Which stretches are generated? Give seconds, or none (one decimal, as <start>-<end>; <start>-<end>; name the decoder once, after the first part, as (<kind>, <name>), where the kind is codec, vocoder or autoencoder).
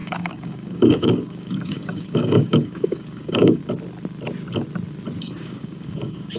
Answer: 0.0-3.6 (codec, DAC); 5.2-6.4